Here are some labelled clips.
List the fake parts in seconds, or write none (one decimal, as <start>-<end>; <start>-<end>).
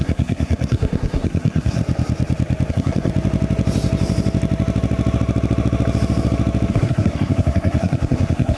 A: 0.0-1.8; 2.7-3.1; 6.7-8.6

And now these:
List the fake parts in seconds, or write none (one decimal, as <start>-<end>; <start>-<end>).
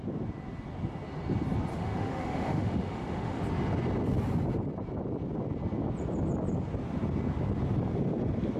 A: 1.7-3.4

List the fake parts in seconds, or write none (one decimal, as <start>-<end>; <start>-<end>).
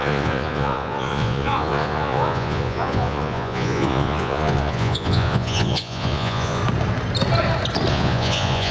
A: 0.0-6.6; 7.9-8.7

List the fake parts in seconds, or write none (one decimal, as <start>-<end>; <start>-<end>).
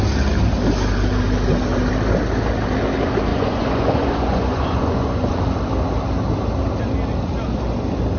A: 3.3-5.4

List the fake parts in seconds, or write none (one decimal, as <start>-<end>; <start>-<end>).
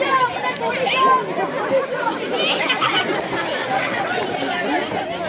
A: 3.6-4.2